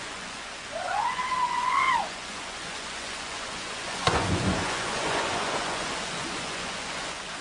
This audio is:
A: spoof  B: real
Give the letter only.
A